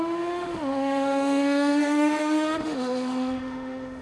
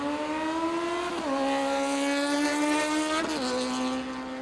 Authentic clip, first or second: second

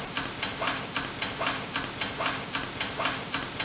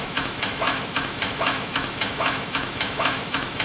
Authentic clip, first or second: first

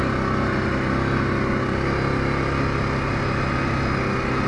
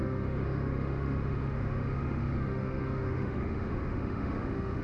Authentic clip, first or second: first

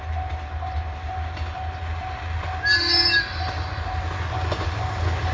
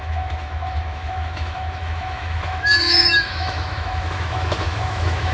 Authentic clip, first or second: first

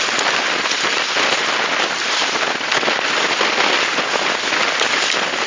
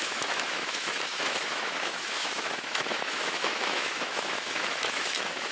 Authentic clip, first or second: first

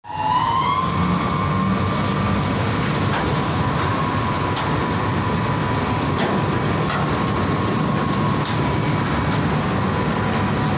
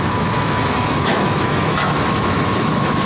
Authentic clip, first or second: first